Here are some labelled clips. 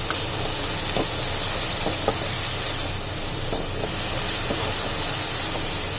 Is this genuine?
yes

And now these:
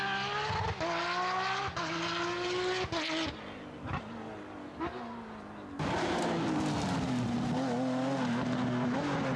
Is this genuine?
yes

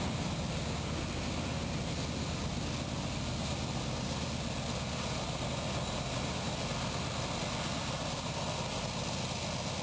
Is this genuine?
yes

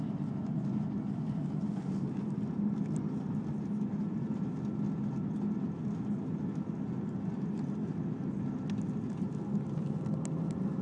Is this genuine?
yes